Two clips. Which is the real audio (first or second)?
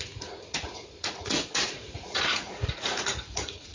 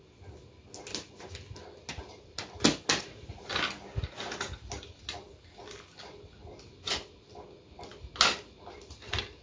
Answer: second